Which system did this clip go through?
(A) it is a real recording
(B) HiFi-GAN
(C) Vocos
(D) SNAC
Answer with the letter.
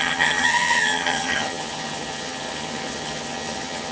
B